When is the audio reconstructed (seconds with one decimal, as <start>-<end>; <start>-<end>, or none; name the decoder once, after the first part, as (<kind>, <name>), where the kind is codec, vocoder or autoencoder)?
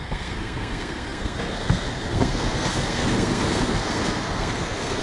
0.0-5.0 (codec, SNAC)